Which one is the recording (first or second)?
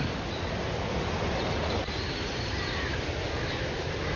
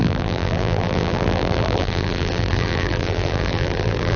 first